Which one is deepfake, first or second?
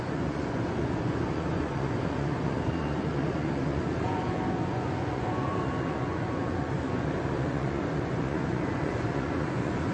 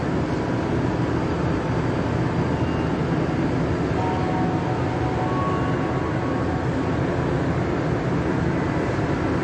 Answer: first